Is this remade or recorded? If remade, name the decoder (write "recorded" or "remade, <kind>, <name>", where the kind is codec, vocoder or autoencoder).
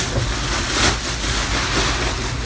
recorded